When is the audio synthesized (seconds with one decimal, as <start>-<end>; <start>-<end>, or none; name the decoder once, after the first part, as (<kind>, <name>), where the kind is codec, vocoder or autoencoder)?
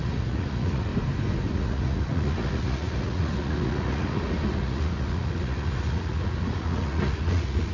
0.0-0.9 (vocoder, Vocos); 1.5-7.7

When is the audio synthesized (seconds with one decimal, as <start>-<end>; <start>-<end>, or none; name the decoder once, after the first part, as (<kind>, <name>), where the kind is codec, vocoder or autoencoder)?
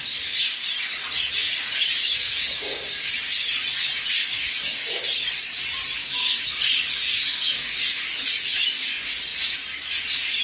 1.4-3.1 (codec, DAC); 4.2-5.0; 6.0-8.0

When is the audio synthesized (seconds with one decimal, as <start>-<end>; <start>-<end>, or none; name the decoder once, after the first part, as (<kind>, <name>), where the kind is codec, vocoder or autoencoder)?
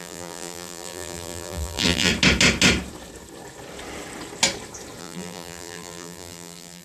0.0-2.1 (vocoder, BigVGAN v2); 5.0-6.8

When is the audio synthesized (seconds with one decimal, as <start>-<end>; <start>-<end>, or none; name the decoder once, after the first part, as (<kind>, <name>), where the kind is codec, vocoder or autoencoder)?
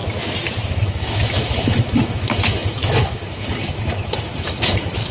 0.8-5.1 (autoencoder, DAC-VAE)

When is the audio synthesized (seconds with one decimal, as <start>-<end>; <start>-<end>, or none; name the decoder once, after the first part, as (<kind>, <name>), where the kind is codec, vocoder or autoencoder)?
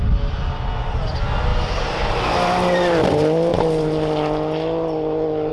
none